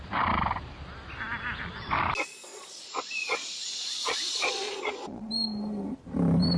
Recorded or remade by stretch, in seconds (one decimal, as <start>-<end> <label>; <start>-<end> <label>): 0.0-2.5 recorded; 2.5-5.3 remade; 5.3-6.6 recorded